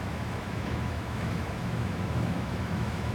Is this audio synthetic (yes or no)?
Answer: yes